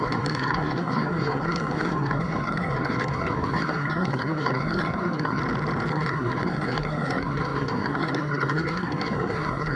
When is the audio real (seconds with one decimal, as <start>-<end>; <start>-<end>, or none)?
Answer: 5.4-5.9